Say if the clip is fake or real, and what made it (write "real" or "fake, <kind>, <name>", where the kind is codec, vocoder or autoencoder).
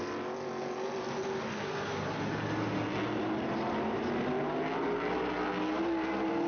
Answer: real